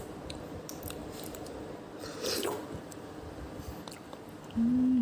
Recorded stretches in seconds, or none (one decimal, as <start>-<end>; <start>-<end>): 0.0-1.0; 1.7-5.0